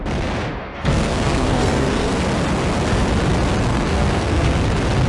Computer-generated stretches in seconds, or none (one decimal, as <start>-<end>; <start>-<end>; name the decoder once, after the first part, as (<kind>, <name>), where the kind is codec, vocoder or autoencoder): 0.6-2.1 (codec, SNAC); 3.7-4.5